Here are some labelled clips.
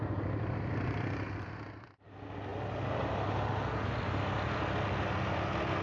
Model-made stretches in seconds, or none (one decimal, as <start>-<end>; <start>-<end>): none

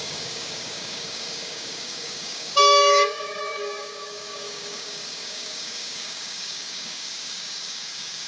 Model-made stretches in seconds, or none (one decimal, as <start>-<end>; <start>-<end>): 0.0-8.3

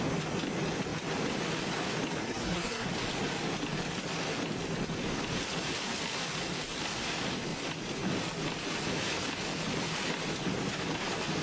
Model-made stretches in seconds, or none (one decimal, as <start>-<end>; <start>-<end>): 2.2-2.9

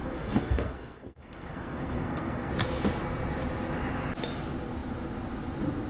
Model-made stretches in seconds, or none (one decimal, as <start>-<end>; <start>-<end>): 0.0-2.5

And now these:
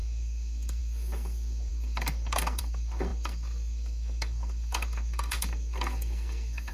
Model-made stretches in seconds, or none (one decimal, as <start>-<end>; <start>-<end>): 0.0-6.7

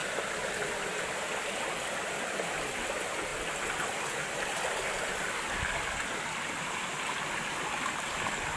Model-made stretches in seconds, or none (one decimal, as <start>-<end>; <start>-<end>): none

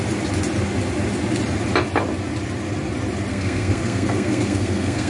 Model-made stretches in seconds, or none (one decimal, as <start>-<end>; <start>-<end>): 3.3-5.1